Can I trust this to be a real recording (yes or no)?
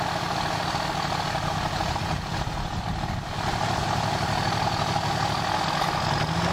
yes